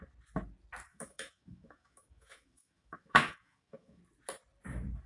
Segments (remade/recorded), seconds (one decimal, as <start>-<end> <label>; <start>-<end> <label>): 0.0-0.9 recorded; 0.9-4.0 remade; 4.0-5.1 recorded

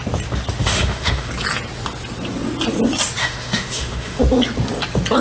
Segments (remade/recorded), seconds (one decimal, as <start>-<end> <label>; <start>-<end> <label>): 0.0-0.6 recorded; 0.6-1.3 remade; 1.3-3.2 recorded; 3.2-4.2 remade; 4.2-5.2 recorded

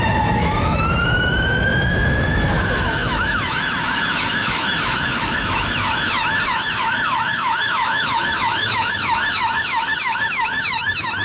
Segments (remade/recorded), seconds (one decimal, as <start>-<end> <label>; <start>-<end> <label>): 0.0-11.2 remade

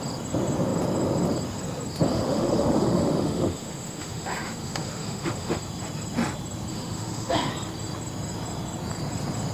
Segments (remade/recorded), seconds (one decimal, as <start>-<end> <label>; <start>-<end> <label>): 0.0-2.1 recorded; 2.1-5.6 remade; 5.6-6.7 recorded; 6.7-7.5 remade; 7.5-9.5 recorded

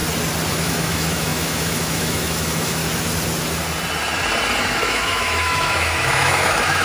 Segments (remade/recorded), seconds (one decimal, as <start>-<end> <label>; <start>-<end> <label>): 0.0-0.5 recorded; 0.5-2.8 remade; 2.8-4.6 recorded; 4.6-6.8 remade

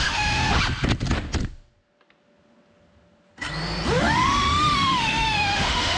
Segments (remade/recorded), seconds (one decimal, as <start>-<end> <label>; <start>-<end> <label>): 0.0-0.4 remade; 0.4-4.0 recorded; 4.0-6.0 remade

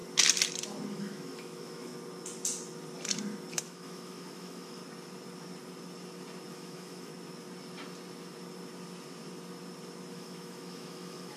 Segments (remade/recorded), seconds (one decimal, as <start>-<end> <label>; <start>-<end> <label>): 0.0-0.9 recorded; 0.9-1.9 remade; 1.9-3.5 recorded; 3.5-4.8 remade; 4.8-6.5 recorded; 6.5-7.1 remade; 7.1-10.1 recorded; 10.1-11.4 remade

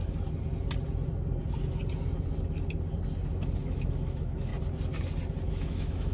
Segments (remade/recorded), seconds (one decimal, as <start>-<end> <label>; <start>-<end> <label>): 0.0-3.6 recorded; 3.6-4.5 remade; 4.5-5.5 recorded; 5.5-6.1 remade